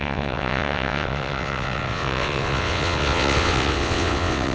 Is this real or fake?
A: fake